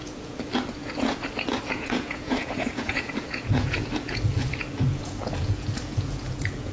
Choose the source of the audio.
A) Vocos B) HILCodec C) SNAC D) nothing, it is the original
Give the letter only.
A